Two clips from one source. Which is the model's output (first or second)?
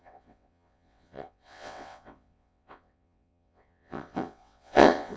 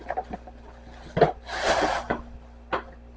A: first